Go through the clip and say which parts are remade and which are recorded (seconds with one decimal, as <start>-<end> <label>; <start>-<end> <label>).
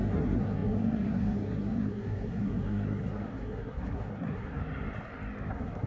0.0-4.6 remade; 4.6-5.5 recorded; 5.5-5.9 remade